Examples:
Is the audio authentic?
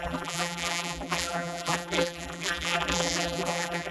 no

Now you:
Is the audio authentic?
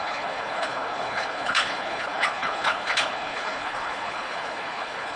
no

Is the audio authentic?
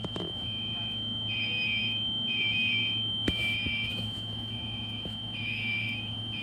no